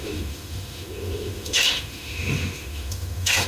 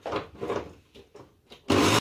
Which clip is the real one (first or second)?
second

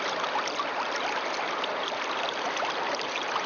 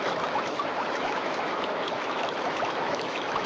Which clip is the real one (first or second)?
first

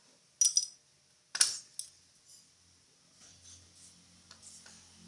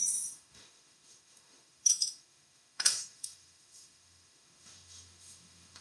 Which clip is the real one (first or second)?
first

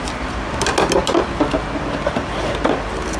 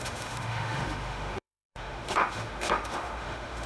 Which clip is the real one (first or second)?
first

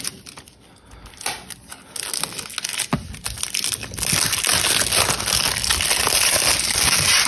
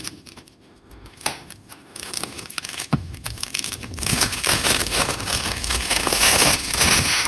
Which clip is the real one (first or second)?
first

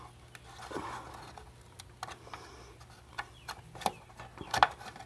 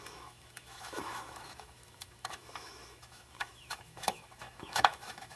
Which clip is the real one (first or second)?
first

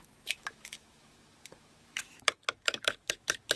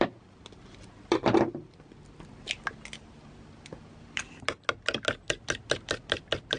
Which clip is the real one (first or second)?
second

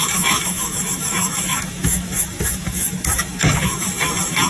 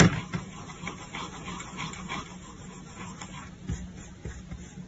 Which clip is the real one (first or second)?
second